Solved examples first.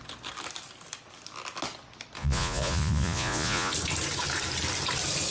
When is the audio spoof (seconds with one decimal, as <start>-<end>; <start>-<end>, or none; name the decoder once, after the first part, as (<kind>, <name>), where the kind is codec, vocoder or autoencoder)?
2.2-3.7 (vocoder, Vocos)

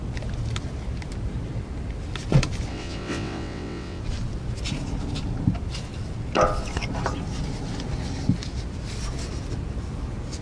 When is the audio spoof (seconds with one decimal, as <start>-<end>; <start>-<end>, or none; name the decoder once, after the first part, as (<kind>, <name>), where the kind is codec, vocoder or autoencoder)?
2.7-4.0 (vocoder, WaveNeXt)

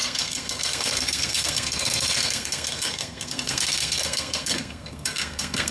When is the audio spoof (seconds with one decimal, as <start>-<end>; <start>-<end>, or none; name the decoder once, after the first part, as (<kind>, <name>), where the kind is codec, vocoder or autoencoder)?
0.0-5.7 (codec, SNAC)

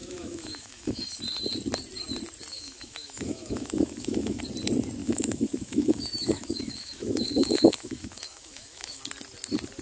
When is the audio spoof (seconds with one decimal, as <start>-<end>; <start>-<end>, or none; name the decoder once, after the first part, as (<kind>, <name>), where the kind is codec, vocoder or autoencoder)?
0.0-1.2 (autoencoder, DAC-VAE); 2.5-4.4; 5.0-9.0